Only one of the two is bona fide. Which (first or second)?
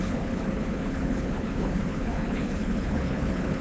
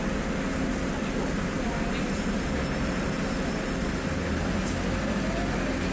second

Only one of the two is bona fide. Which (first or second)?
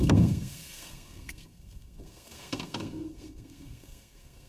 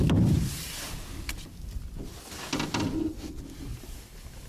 second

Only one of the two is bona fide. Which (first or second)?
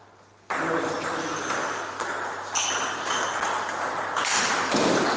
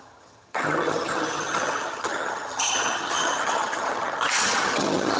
first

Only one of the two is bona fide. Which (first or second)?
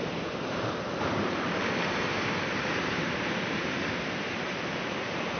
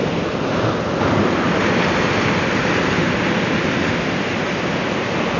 second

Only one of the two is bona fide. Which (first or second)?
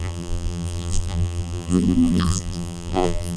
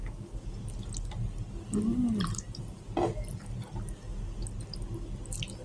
second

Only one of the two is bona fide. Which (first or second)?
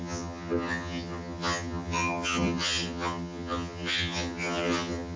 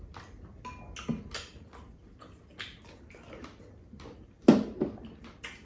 second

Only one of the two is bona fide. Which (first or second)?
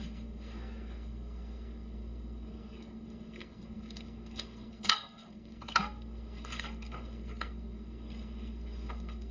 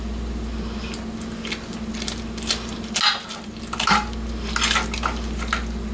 second